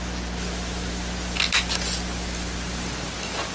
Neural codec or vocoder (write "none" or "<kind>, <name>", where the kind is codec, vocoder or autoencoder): none